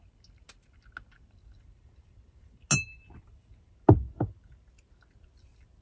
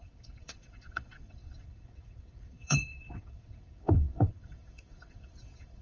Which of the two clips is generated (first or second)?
second